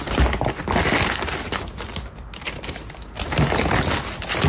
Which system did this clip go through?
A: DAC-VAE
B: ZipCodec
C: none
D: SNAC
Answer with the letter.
C